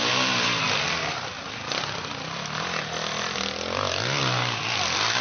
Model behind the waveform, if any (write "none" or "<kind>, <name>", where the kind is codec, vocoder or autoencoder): none